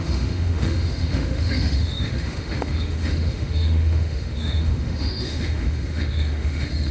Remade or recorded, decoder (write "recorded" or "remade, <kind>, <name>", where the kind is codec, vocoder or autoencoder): remade, autoencoder, DAC-VAE